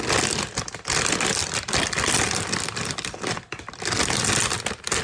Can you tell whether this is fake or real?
real